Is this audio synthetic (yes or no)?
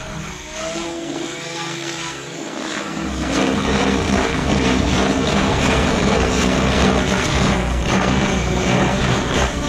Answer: yes